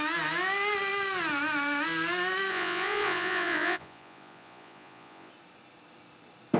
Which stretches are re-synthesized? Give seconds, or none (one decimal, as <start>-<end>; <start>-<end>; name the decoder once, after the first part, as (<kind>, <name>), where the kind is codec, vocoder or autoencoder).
2.5-5.3 (vocoder, Vocos)